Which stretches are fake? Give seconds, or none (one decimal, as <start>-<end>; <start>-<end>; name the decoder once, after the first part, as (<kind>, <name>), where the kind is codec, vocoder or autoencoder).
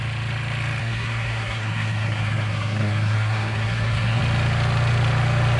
0.8-4.2 (codec, SNAC)